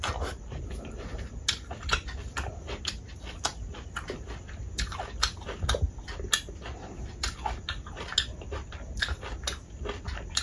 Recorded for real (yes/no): yes